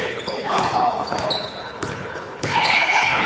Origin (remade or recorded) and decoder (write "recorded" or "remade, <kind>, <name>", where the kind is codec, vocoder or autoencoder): remade, codec, HILCodec